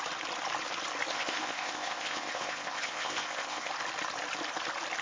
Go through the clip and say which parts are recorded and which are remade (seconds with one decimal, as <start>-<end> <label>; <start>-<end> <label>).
0.0-1.1 recorded; 1.1-3.7 remade; 3.7-5.0 recorded